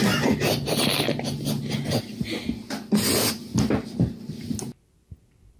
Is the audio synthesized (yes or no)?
no